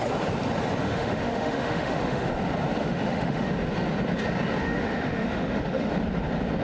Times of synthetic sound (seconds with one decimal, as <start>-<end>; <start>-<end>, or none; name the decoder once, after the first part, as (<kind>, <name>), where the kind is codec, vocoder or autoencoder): 0.8-2.3 (autoencoder, DAC-VAE); 2.8-3.5; 4.6-5.9